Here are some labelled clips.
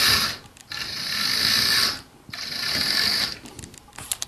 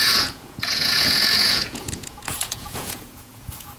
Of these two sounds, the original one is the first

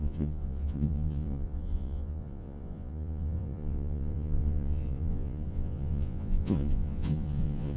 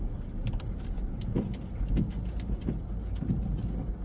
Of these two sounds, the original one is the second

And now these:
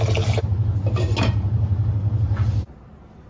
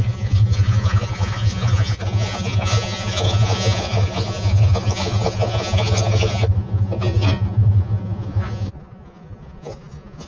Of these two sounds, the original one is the first